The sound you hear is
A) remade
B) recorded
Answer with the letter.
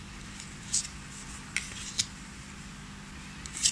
B